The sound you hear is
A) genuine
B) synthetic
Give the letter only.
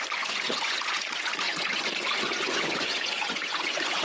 B